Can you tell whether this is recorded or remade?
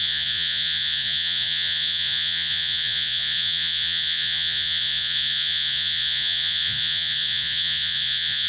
remade